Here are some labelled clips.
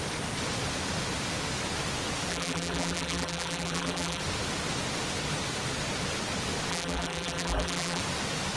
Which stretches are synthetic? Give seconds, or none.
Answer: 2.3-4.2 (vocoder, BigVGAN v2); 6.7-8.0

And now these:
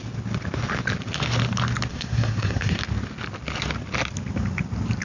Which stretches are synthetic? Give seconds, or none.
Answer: 1.9-2.8 (codec, SNAC)

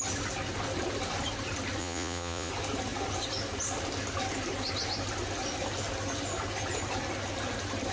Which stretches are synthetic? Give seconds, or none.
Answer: 1.8-2.5 (vocoder, Vocos)

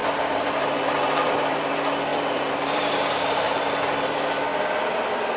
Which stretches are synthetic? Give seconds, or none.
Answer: 0.0-1.7 (vocoder, BigVGAN v2); 2.1-3.5

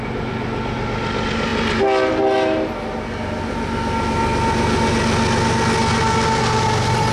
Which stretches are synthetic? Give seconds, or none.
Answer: none

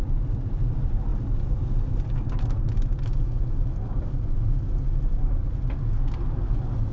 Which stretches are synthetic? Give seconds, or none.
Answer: none

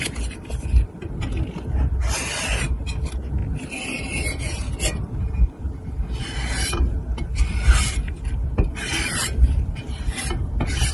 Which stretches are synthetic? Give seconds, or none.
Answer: 8.9-10.0 (vocoder, BigVGAN v2)